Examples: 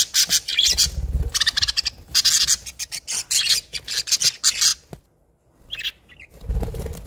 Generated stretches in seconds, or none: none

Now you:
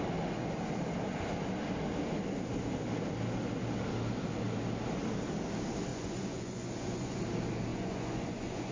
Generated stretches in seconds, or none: 5.9-7.2 (vocoder, Vocos); 7.7-8.7

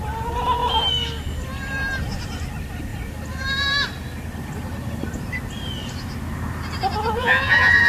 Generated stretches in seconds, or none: 7.2-7.9 (vocoder, Vocos)

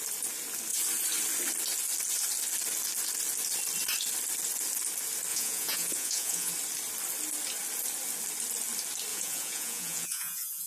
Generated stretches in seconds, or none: 5.3-6.5 (vocoder, Vocos); 9.1-10.7

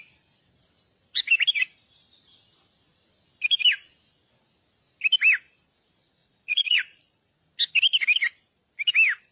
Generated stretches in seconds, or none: 6.2-7.5 (vocoder, Vocos)

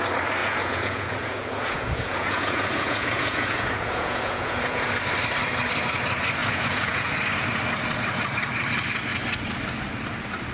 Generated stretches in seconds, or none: 0.4-4.9 (vocoder, Vocos); 6.4-7.2

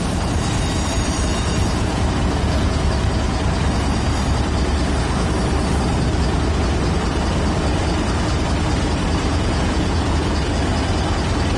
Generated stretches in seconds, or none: 1.3-2.9 (vocoder, Vocos); 9.3-10.3